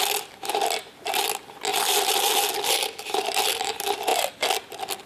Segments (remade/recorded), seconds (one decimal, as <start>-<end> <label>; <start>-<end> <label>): 0.0-5.1 recorded